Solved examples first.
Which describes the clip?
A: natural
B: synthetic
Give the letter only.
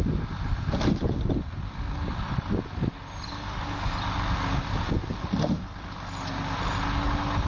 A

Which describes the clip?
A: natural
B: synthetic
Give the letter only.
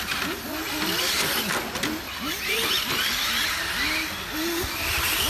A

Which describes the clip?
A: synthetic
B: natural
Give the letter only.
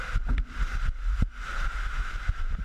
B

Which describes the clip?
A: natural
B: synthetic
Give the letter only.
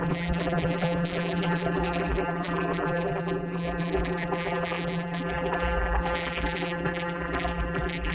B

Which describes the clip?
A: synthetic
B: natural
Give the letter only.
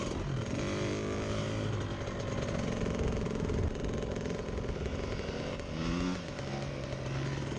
B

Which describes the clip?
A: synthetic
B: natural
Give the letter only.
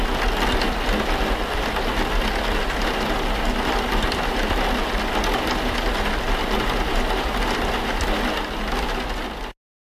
B